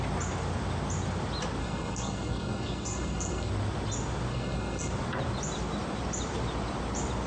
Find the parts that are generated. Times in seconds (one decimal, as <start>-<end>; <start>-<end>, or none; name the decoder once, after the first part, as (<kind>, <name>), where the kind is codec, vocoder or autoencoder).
1.6-3.5 (codec, SNAC); 4.3-4.9